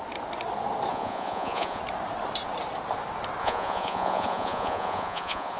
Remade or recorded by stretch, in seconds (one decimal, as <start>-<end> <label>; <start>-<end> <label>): 0.0-0.9 recorded; 0.9-1.8 remade; 1.8-3.4 recorded; 3.4-5.6 remade